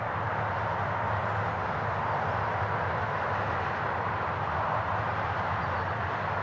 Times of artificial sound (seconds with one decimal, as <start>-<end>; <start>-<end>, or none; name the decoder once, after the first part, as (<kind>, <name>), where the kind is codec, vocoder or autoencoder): none

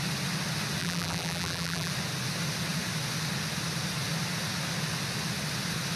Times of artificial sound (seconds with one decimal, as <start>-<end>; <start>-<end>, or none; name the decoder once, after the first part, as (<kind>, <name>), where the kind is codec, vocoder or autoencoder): 0.8-1.9 (vocoder, BigVGAN v2)